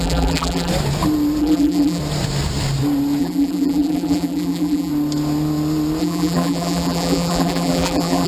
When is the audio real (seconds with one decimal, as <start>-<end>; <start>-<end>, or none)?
0.7-1.4; 2.0-3.2; 4.9-6.0